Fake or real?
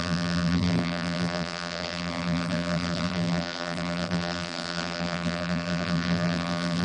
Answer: fake